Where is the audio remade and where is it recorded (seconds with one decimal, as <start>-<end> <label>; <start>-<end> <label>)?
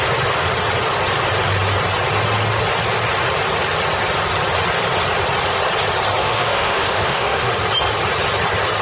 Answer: 0.0-6.2 recorded; 6.2-7.5 remade; 7.5-8.8 recorded